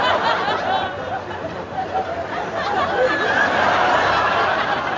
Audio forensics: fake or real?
real